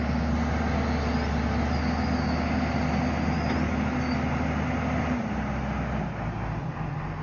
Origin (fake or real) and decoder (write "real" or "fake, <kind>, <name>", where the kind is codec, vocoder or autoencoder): real